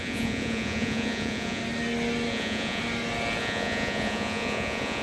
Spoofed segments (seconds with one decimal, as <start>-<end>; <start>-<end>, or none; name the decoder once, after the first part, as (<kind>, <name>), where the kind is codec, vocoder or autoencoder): 0.0-1.6 (vocoder, Vocos); 2.3-2.8; 3.4-5.0